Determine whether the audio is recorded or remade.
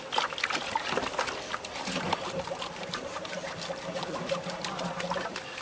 recorded